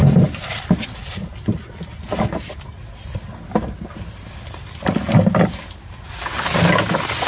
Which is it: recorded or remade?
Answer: recorded